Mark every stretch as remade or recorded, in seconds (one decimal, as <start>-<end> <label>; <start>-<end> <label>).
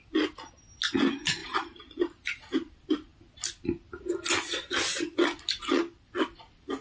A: 0.0-1.4 recorded; 1.4-2.7 remade; 2.7-6.8 recorded